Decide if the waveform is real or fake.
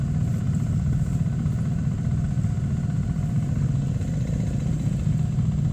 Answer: real